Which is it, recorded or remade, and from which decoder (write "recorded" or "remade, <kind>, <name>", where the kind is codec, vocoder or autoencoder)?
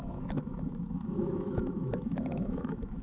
remade, autoencoder, DAC-VAE